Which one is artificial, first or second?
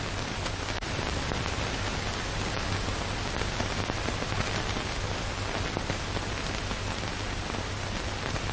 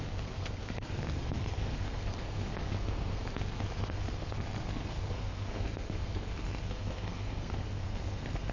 second